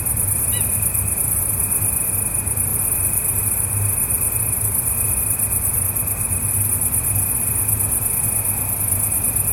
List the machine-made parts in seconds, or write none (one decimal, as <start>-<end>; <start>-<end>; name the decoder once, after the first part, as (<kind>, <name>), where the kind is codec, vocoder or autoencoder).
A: 2.7-3.4 (vocoder, BigVGAN v2)